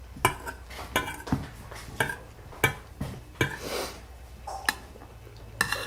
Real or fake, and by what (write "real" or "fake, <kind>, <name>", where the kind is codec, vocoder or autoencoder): real